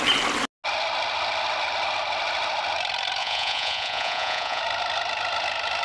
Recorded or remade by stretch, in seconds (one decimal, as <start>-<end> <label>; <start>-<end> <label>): 0.0-3.2 recorded; 3.2-4.6 remade; 4.6-5.8 recorded